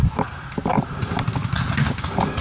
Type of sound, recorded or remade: recorded